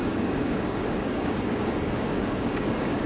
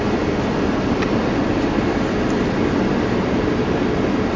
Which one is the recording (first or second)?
second